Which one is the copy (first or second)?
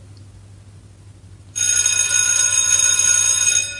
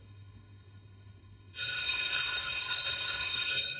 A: second